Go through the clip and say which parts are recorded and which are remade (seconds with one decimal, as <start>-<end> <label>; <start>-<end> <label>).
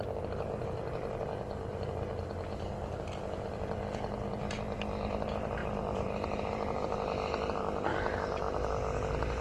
0.0-5.6 recorded; 5.6-7.6 remade; 7.6-9.4 recorded